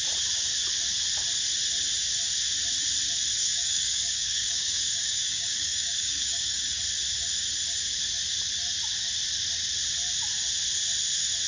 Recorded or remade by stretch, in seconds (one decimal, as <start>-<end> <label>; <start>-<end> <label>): 0.0-3.4 recorded; 3.4-6.8 remade; 6.8-11.5 recorded